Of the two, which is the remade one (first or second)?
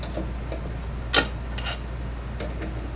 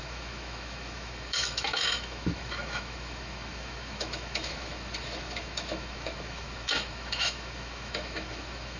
second